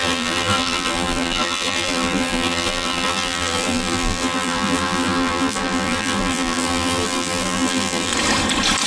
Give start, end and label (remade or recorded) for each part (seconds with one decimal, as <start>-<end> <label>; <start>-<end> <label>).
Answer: 0.0-8.1 remade; 8.1-8.9 recorded